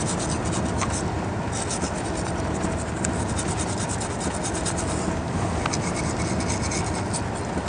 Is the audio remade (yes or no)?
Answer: no